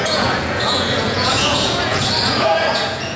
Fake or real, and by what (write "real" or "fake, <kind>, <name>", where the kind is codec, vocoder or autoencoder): fake, vocoder, Vocos